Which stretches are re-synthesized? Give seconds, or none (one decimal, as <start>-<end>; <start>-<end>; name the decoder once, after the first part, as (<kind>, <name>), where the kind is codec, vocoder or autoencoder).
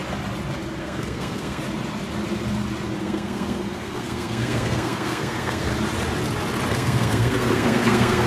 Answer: 0.8-1.6 (codec, SNAC); 3.0-5.7; 6.7-8.3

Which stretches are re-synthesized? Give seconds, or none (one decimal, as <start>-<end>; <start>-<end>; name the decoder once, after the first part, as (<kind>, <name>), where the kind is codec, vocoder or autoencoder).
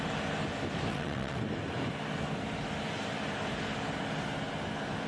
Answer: 0.9-1.4 (vocoder, WaveNeXt)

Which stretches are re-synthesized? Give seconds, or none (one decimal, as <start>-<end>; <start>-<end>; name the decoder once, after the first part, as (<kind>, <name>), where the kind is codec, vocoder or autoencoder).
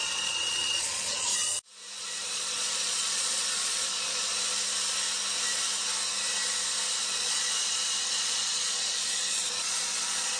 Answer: 0.0-1.3 (vocoder, Vocos); 2.0-4.3; 7.0-10.4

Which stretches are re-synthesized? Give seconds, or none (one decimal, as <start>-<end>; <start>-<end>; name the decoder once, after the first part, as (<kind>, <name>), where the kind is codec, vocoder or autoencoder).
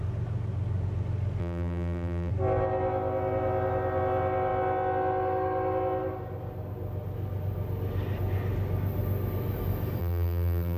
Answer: 1.4-2.3 (vocoder, BigVGAN v2); 10.0-10.8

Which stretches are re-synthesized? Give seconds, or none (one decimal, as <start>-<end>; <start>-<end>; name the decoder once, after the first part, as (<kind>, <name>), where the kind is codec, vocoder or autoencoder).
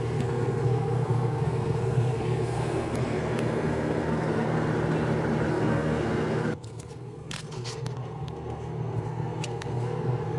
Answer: 0.0-4.7 (codec, SNAC); 5.5-10.4